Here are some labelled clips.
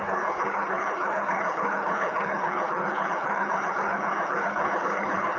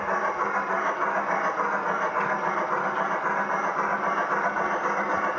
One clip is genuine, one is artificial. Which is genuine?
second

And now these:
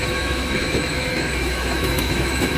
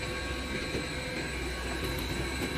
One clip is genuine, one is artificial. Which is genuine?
second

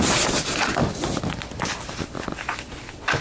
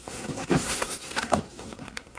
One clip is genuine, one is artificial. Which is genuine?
first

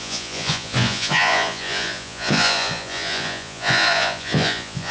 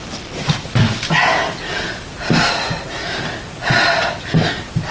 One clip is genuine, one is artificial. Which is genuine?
second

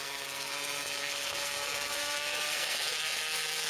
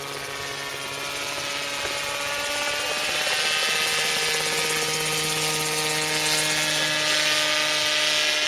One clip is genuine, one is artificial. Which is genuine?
second